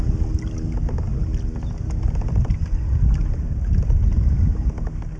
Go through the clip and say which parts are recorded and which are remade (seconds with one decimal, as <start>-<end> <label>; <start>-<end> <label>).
0.0-5.2 recorded

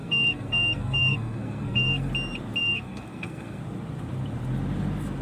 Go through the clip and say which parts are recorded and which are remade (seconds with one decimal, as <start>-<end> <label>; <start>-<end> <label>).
0.0-2.1 remade; 2.1-2.6 recorded; 2.6-3.6 remade; 3.6-5.2 recorded

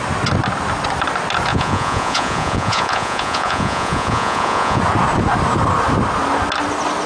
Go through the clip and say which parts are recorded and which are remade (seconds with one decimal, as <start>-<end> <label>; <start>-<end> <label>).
0.0-1.5 recorded; 1.5-4.8 remade; 4.8-7.1 recorded

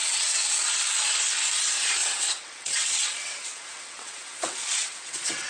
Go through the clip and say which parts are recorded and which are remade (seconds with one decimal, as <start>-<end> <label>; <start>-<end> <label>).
0.0-0.7 remade; 0.7-2.0 recorded; 2.0-5.5 remade

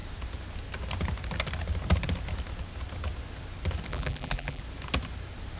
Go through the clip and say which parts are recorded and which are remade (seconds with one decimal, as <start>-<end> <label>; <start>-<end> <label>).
0.0-3.9 recorded; 3.9-4.6 remade; 4.6-5.6 recorded

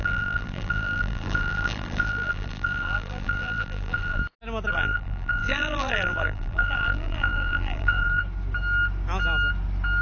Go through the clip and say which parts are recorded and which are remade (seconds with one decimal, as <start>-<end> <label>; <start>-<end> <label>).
0.0-4.2 remade; 4.2-4.7 recorded; 4.7-8.2 remade; 8.2-10.0 recorded